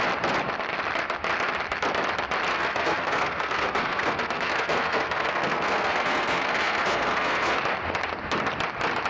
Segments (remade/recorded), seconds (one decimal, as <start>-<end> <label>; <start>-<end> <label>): 0.0-2.5 recorded; 2.5-7.6 remade; 7.6-9.1 recorded